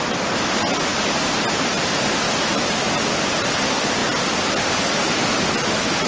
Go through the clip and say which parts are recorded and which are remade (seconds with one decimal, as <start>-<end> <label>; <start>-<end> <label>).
0.0-6.1 recorded